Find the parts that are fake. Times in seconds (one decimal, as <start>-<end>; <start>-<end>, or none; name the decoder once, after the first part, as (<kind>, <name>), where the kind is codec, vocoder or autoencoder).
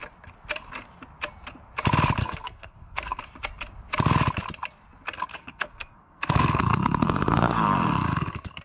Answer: 2.2-3.2 (codec, SNAC); 5.3-8.6